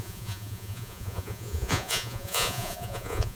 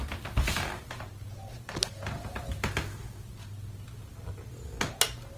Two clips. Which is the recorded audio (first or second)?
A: second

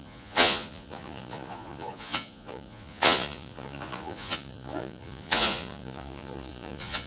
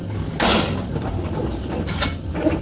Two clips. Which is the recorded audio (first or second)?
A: second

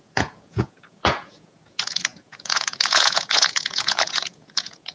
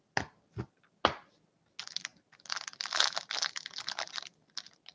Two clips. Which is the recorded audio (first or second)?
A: second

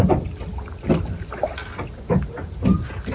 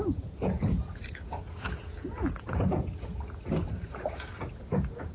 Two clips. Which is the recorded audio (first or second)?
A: first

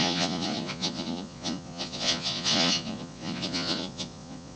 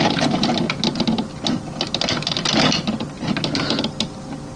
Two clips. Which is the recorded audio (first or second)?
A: second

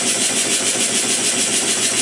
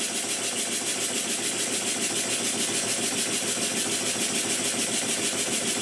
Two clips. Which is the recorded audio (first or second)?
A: second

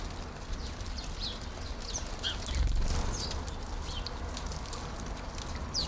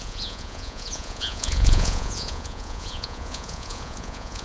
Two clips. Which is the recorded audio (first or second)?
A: first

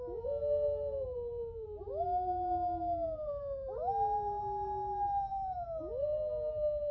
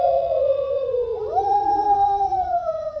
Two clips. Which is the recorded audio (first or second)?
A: first